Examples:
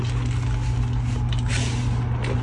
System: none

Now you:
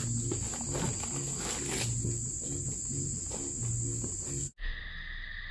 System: none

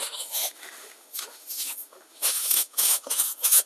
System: autoencoder, DAC-VAE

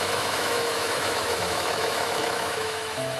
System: autoencoder, DAC-VAE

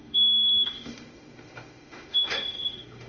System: autoencoder, DAC-VAE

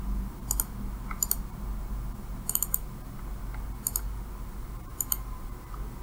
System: none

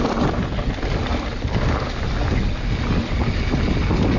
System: none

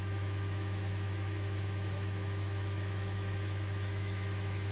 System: autoencoder, DAC-VAE